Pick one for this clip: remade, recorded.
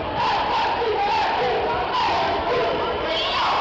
recorded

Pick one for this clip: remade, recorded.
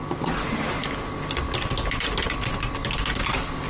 recorded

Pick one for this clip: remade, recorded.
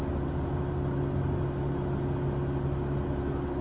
recorded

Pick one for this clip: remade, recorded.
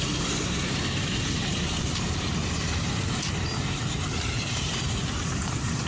remade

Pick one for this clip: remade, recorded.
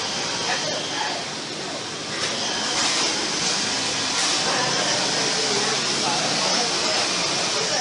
recorded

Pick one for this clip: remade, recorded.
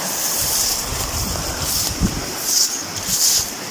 remade